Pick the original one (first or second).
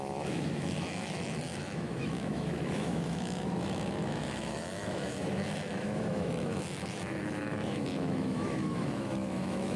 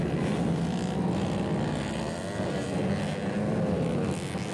second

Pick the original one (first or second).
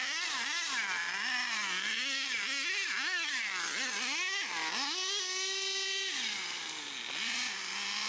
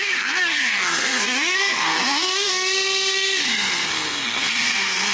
first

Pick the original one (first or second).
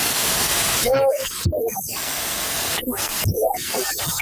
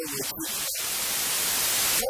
second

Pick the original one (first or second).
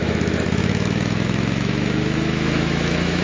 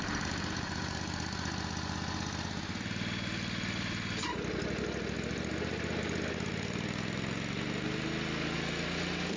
second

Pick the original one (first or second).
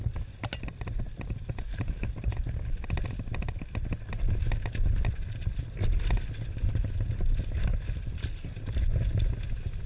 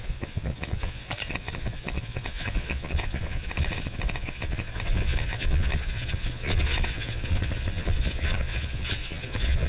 first